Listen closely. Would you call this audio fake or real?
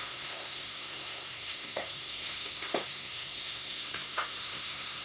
fake